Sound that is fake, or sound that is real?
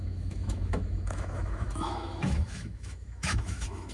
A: fake